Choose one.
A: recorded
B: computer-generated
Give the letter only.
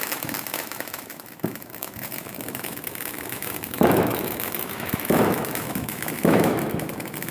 B